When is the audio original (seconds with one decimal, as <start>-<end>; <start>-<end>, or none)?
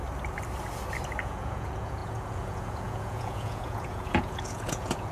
0.0-1.2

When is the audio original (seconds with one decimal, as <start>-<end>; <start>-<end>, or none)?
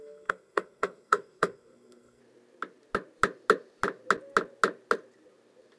2.2-5.8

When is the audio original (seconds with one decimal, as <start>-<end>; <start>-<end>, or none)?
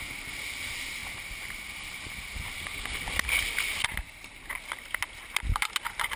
0.0-6.2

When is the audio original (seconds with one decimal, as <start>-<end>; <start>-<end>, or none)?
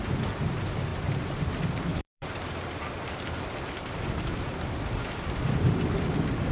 0.0-0.9; 1.5-1.9; 5.8-6.5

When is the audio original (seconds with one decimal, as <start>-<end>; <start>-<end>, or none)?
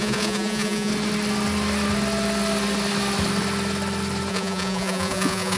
0.9-4.3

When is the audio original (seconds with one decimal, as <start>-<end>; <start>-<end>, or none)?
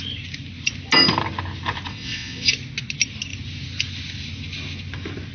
0.0-1.9; 2.5-5.3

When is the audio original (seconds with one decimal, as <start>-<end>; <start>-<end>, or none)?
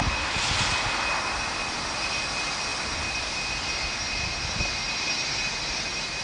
0.0-6.2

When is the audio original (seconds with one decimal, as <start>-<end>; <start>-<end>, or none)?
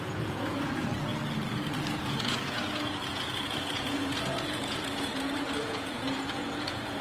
1.1-2.1